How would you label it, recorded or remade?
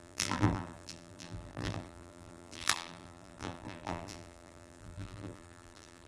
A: remade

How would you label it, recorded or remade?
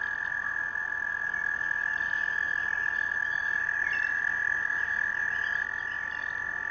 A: recorded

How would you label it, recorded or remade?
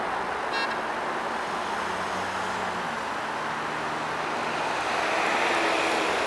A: recorded